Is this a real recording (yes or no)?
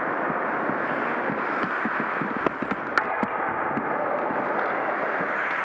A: yes